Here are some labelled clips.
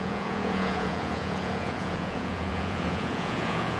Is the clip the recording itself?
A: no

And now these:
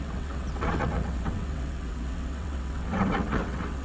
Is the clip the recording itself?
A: no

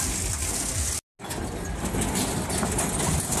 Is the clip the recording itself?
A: yes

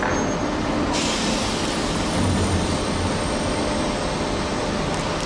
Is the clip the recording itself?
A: yes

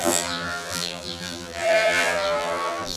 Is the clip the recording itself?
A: no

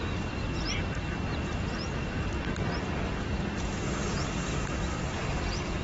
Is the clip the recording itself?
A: yes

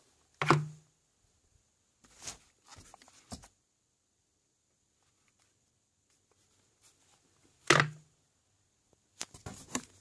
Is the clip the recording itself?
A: yes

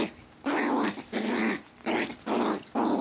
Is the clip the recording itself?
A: yes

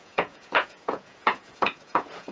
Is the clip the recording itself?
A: no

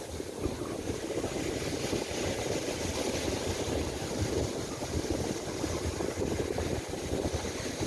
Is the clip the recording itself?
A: yes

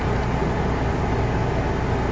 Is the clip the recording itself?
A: yes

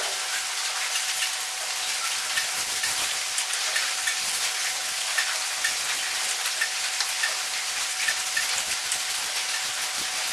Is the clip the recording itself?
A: yes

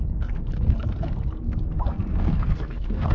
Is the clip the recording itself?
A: no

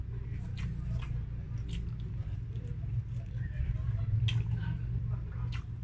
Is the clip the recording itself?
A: yes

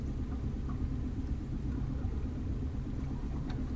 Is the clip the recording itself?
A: yes